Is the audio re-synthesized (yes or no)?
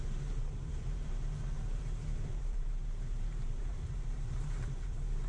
yes